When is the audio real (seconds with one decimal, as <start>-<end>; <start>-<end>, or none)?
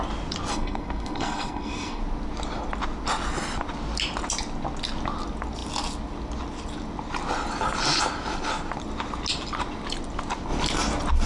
0.0-0.5; 2.0-11.3